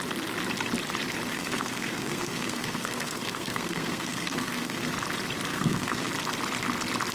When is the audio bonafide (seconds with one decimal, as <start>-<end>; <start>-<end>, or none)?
0.0-1.3; 4.9-5.5; 6.1-7.1